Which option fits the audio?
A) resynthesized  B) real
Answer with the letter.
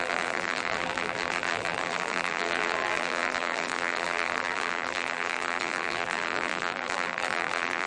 A